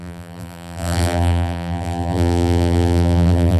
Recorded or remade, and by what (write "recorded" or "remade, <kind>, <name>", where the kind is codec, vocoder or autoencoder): remade, vocoder, BigVGAN v2